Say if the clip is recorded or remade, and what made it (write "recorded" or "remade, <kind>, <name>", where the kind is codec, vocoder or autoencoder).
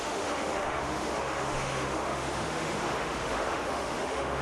remade, autoencoder, DAC-VAE